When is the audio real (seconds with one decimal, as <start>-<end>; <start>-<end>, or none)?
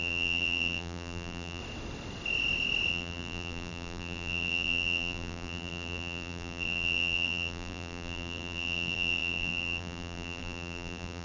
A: 1.6-2.9